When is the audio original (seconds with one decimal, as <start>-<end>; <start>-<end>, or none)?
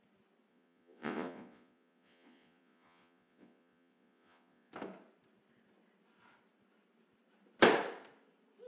0.0-0.5; 4.7-8.7